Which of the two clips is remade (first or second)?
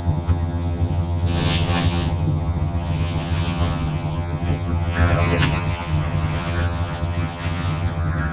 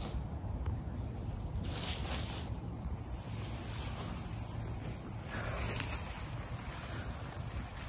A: first